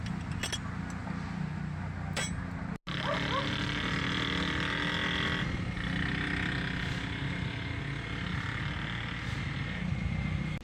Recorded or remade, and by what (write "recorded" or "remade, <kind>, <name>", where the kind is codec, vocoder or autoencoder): recorded